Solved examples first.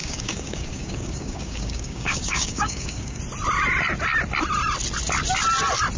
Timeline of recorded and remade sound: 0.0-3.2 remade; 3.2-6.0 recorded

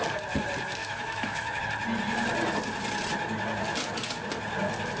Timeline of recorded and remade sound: 0.0-0.8 recorded; 0.8-1.6 remade; 1.6-5.0 recorded

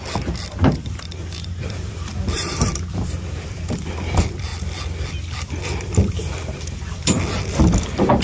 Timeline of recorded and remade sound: 0.0-8.2 remade